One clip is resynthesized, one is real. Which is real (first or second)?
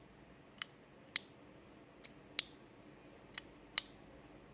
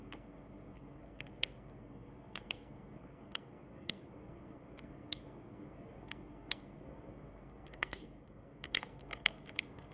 first